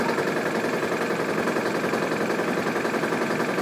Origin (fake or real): fake